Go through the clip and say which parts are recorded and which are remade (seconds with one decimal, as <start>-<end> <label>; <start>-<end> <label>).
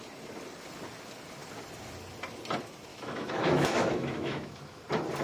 0.0-2.9 recorded; 2.9-4.8 remade; 4.8-5.2 recorded